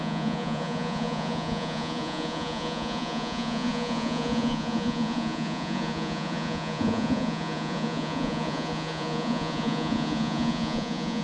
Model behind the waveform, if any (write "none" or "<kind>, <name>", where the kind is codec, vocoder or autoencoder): vocoder, Vocos